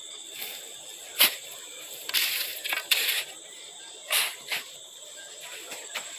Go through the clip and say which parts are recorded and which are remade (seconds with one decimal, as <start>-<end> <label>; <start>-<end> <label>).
0.0-1.1 recorded; 1.1-2.1 remade; 2.1-2.5 recorded; 2.5-6.2 remade